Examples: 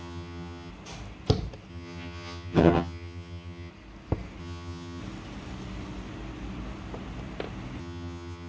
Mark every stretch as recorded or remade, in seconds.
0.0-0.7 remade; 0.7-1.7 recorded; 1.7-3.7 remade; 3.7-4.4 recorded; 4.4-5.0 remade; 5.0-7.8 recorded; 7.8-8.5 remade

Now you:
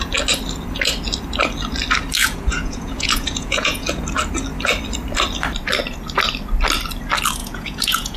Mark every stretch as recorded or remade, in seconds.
0.0-2.2 recorded; 2.2-4.0 remade; 4.0-7.4 recorded; 7.4-8.2 remade

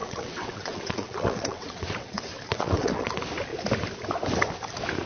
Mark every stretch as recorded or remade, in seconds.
0.0-3.1 remade; 3.1-5.1 recorded

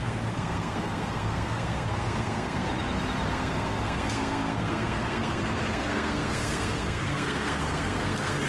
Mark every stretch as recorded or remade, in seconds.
0.0-2.7 remade; 2.7-3.3 recorded; 3.3-8.5 remade